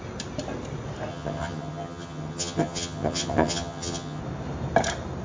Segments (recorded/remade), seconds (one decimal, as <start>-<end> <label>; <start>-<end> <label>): 0.0-1.1 recorded; 1.1-4.2 remade; 4.2-5.2 recorded